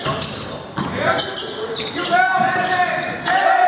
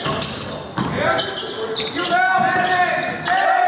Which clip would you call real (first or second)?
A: second